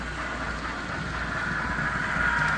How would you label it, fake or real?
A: real